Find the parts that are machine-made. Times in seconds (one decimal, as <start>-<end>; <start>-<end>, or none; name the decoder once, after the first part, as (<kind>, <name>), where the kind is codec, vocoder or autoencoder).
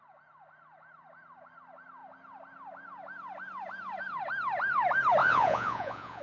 5.2-6.2 (vocoder, Vocos)